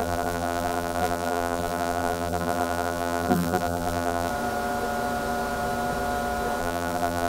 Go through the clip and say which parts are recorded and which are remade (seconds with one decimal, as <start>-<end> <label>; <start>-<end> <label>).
0.0-4.3 remade; 4.3-6.6 recorded; 6.6-7.3 remade